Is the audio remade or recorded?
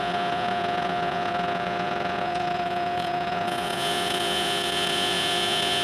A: remade